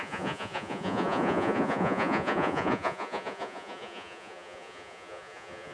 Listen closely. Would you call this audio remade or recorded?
remade